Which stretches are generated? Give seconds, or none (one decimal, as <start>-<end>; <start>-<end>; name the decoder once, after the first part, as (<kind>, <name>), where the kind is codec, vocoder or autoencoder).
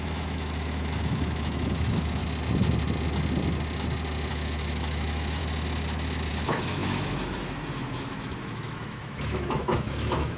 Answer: 0.0-2.2 (autoencoder, DAC-VAE); 4.3-5.4; 6.3-10.4